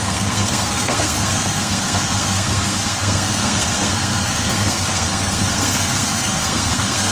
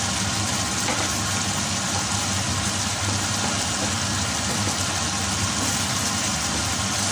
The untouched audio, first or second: second